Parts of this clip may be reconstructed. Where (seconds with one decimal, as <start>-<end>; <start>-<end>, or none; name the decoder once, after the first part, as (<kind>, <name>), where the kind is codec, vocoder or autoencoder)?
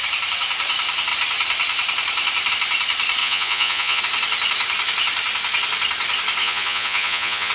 3.2-4.0 (vocoder, Vocos); 6.4-7.5